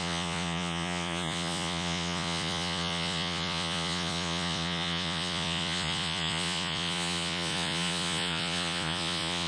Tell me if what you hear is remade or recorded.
remade